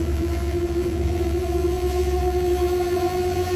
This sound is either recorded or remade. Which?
remade